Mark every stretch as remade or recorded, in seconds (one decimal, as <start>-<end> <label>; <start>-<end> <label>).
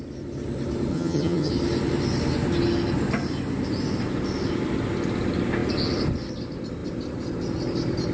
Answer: 0.0-0.9 recorded; 0.9-1.5 remade; 1.5-8.1 recorded